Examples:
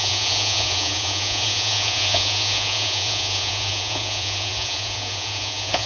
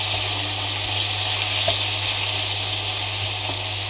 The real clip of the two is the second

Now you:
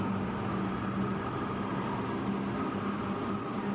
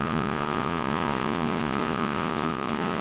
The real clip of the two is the first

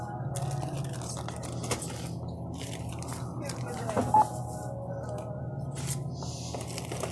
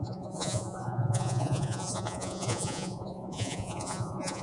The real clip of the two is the first